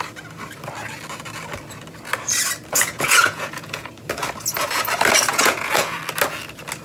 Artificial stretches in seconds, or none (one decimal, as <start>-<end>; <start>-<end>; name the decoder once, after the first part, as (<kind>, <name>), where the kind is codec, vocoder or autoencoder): 2.7-3.9 (vocoder, Vocos); 5.3-6.0